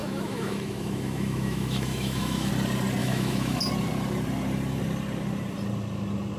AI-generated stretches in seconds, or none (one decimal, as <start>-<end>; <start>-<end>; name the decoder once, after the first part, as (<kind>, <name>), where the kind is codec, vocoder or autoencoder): 0.0-2.5 (autoencoder, DAC-VAE); 3.0-3.6